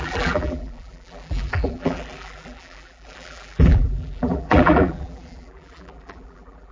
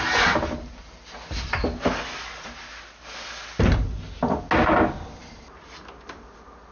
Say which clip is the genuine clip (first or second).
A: second